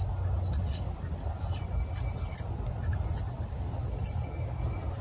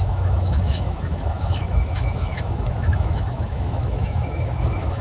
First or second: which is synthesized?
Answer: second